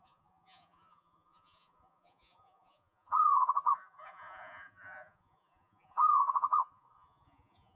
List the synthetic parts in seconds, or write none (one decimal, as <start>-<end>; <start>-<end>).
0.0-7.8